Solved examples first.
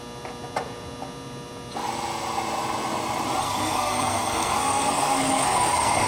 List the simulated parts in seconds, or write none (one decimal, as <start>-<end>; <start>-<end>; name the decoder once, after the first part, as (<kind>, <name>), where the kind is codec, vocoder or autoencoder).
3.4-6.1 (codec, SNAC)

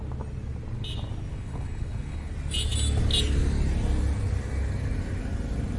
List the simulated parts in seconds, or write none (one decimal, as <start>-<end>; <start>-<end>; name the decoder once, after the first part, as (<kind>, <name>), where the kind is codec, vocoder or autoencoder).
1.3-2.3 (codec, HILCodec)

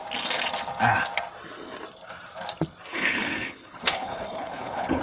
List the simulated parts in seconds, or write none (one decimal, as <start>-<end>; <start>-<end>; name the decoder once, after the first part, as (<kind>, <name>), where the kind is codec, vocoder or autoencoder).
2.9-5.0 (codec, HILCodec)

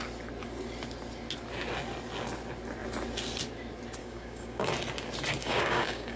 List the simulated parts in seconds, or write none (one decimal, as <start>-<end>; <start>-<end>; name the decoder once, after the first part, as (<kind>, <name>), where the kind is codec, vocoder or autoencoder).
4.0-4.7 (codec, DAC); 5.4-6.2

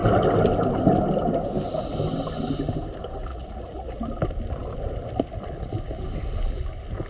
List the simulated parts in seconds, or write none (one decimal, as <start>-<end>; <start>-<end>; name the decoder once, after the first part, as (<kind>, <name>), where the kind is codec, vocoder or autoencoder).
3.3-3.9 (vocoder, Vocos)

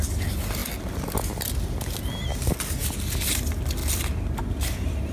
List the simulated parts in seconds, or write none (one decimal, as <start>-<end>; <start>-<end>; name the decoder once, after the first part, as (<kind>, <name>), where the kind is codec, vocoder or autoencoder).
none

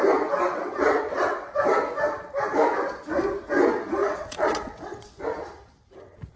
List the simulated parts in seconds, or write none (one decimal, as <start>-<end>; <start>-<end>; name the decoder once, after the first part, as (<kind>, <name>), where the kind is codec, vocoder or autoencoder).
0.5-1.8 (vocoder, WaveNeXt); 4.0-5.2